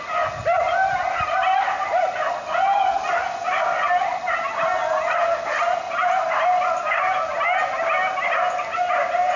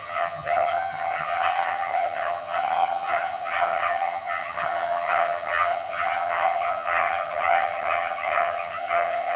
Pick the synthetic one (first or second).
second